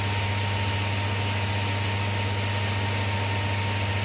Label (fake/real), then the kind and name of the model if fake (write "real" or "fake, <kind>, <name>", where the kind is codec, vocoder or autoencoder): real